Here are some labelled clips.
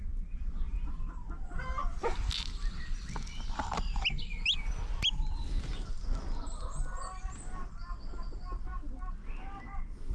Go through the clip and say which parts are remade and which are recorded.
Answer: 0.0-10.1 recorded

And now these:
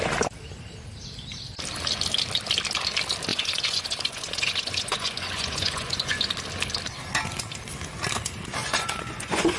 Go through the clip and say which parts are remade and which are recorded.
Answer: 0.0-3.3 recorded; 3.3-6.2 remade; 6.2-8.6 recorded; 8.6-9.6 remade

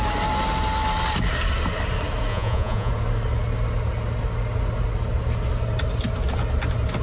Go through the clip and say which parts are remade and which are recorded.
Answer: 0.0-2.3 recorded; 2.3-2.9 remade; 2.9-7.0 recorded

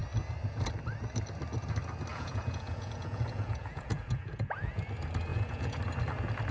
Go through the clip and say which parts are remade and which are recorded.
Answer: 0.0-2.1 recorded; 2.1-4.8 remade; 4.8-5.3 recorded; 5.3-5.8 remade; 5.8-6.5 recorded

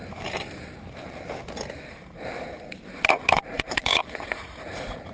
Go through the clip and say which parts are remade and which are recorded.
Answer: 0.0-3.1 recorded; 3.1-5.1 remade